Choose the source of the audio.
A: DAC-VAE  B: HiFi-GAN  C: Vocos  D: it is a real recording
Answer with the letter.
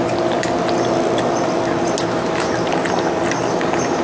D